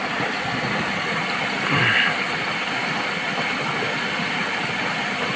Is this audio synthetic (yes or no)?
no